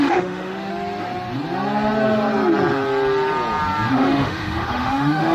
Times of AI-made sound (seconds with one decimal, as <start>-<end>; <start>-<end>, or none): 0.0-0.7; 3.9-5.3